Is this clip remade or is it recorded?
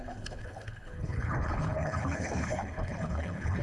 remade